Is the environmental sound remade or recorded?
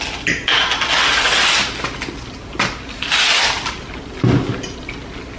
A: recorded